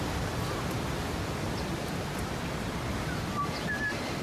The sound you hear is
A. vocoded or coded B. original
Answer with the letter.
B